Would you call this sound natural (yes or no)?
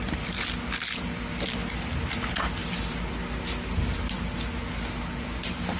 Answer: yes